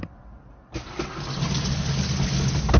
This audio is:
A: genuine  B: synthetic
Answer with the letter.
A